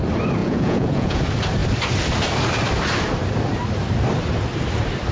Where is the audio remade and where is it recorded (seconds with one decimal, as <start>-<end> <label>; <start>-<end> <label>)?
0.0-0.4 recorded; 0.4-1.2 remade; 1.2-5.1 recorded